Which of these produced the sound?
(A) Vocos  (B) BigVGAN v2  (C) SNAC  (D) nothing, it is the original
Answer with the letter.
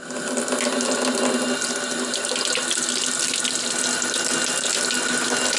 D